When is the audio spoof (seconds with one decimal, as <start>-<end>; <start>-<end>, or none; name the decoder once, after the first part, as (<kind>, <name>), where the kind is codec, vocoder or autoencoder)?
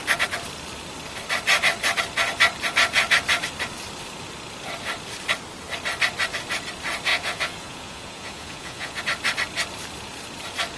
7.1-9.0 (vocoder, Vocos)